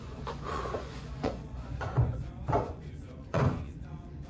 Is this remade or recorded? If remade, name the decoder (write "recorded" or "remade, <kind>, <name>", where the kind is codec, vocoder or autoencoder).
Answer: remade, vocoder, Vocos